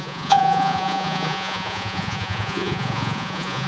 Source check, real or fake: fake